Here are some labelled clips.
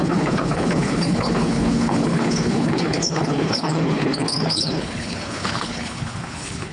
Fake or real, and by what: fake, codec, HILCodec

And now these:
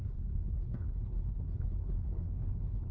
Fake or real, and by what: fake, codec, HILCodec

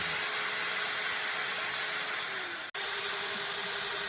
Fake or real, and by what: real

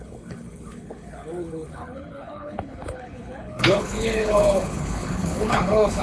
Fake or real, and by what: fake, codec, HILCodec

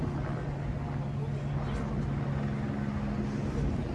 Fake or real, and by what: real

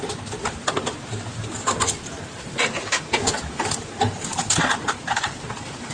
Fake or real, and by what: real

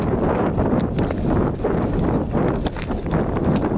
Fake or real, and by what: real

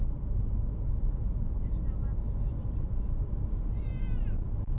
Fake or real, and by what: real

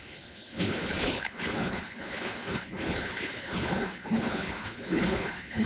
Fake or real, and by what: fake, codec, HILCodec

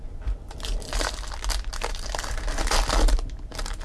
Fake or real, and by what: real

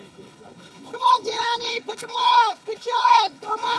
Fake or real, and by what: fake, codec, HILCodec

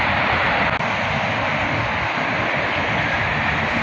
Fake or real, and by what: real